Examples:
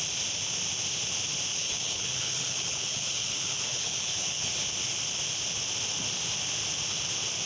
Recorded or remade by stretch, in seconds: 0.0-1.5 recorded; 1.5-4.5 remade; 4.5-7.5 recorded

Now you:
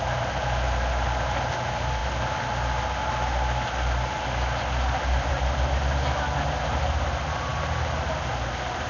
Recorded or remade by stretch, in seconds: 0.0-8.9 recorded